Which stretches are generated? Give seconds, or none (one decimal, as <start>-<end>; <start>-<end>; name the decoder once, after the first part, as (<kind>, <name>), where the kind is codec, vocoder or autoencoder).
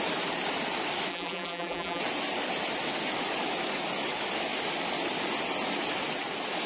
1.1-2.0 (vocoder, BigVGAN v2)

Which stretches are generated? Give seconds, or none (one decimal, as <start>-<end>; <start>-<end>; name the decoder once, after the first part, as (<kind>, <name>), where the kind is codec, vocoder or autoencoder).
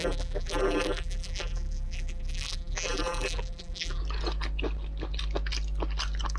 0.0-4.0 (vocoder, BigVGAN v2)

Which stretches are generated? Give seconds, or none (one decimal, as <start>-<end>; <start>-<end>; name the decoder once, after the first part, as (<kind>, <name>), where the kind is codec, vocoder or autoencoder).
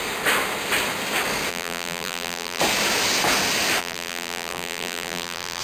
1.5-2.6 (vocoder, BigVGAN v2); 3.8-5.6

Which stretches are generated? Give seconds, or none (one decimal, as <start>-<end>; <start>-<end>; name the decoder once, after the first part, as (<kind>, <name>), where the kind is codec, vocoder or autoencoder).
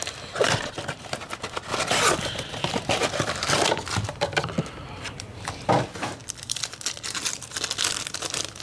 1.7-5.7 (vocoder, BigVGAN v2); 6.2-7.3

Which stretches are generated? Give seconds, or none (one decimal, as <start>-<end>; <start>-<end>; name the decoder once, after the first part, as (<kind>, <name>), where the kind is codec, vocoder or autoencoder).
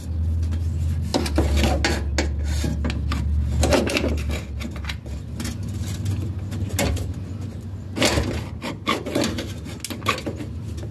none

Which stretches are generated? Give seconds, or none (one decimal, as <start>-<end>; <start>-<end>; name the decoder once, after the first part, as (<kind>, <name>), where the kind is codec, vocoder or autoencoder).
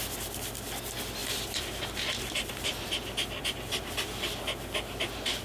1.2-4.4 (vocoder, BigVGAN v2)